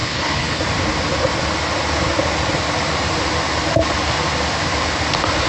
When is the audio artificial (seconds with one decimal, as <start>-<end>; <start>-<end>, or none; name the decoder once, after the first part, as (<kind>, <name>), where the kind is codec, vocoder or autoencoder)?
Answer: 0.0-0.6 (codec, HILCodec)

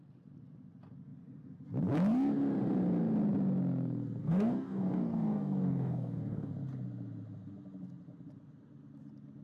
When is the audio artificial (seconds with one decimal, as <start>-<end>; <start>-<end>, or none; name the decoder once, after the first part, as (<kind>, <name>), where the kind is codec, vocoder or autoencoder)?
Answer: 4.2-6.5 (codec, DAC)

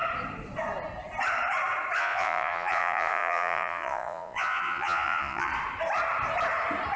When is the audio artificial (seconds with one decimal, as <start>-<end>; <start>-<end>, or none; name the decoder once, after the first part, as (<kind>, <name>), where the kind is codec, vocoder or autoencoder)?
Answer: 2.0-5.5 (vocoder, Vocos)

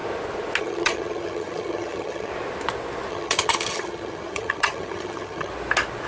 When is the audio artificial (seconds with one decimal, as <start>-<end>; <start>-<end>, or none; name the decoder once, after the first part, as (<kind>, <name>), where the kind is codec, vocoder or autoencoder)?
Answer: 0.6-2.3 (vocoder, HiFi-GAN); 3.1-5.5